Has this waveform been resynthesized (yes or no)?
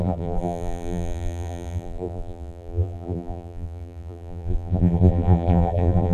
yes